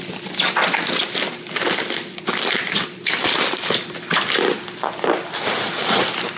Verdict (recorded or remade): recorded